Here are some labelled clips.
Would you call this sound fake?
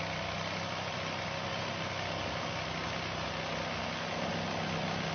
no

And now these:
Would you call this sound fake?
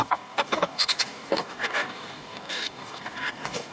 yes